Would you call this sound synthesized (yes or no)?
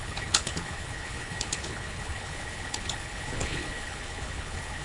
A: yes